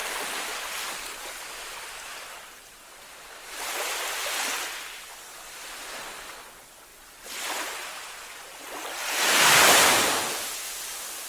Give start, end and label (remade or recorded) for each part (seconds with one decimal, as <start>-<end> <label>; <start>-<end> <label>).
0.0-11.3 recorded